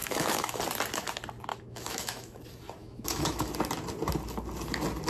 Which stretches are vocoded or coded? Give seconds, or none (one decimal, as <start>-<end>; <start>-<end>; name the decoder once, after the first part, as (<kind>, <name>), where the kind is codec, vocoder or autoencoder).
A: 0.0-0.6 (autoencoder, DAC-VAE); 1.5-2.4; 2.8-3.5